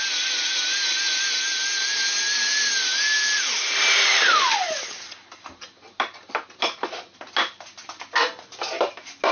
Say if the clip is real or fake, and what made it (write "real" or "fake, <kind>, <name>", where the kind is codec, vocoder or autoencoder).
real